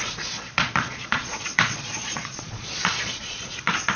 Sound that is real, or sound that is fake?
fake